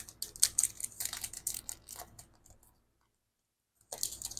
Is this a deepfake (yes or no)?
no